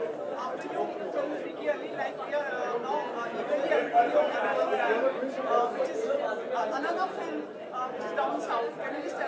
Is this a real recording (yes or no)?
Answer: yes